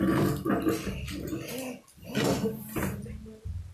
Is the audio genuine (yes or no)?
yes